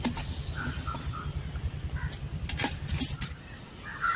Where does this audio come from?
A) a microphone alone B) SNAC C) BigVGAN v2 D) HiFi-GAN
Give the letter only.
A